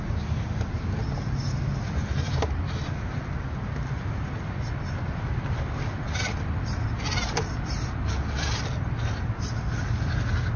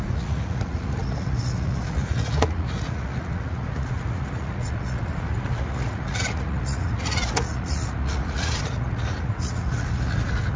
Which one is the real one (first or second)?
first